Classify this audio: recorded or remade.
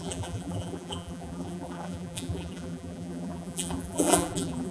remade